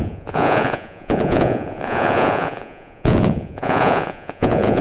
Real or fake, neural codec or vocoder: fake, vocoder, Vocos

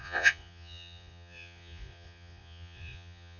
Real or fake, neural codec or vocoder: fake, vocoder, Vocos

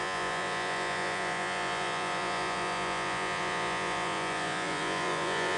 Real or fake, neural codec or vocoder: fake, vocoder, Vocos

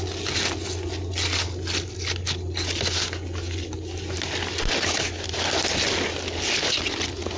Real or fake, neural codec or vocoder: real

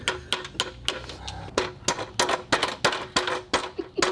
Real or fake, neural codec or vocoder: real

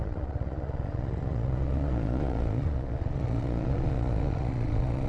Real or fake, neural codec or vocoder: fake, vocoder, Vocos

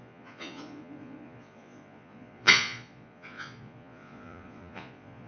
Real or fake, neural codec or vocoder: fake, vocoder, Vocos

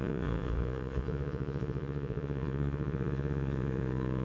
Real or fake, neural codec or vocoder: fake, vocoder, Vocos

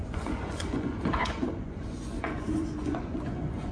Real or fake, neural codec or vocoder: fake, vocoder, Vocos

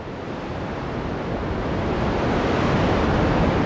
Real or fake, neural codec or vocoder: real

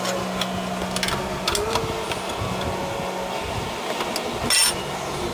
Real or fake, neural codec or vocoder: real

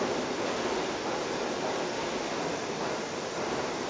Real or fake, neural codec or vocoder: real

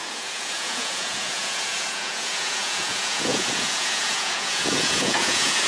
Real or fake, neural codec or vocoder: fake, vocoder, Vocos